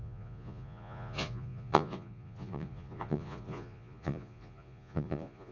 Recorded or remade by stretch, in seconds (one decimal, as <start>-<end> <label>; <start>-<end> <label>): 0.0-5.5 remade